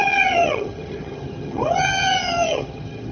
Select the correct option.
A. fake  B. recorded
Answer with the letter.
A